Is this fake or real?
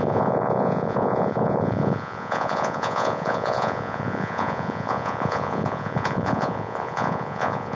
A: fake